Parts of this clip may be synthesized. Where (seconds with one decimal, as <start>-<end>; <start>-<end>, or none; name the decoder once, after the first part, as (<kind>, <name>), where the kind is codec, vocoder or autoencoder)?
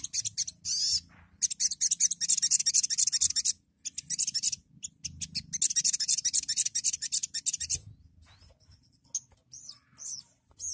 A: none